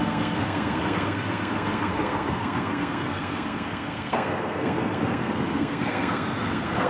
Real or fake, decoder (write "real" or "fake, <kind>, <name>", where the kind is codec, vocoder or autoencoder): fake, codec, SNAC